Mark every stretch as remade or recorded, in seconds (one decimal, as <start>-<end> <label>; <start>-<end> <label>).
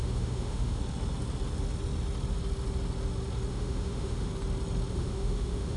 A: 0.0-0.8 remade; 0.8-3.5 recorded; 3.5-4.3 remade; 4.3-4.9 recorded; 4.9-5.8 remade